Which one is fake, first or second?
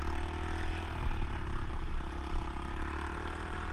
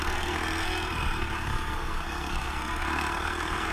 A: second